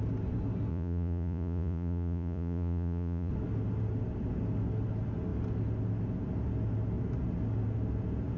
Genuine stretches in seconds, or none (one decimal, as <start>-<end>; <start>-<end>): 0.0-0.7; 3.3-8.4